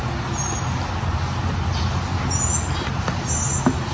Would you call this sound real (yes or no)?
yes